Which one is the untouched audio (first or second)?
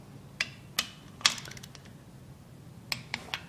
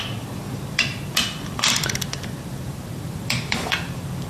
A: first